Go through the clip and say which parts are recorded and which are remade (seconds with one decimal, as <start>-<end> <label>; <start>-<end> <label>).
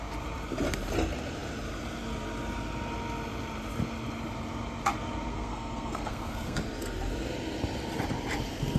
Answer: 0.0-5.3 recorded; 5.3-6.6 remade; 6.6-8.8 recorded